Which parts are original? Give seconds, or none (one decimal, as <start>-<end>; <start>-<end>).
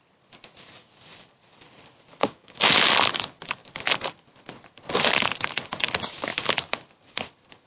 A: 0.0-2.2; 2.7-7.7